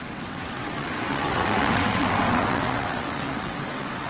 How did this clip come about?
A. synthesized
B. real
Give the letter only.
A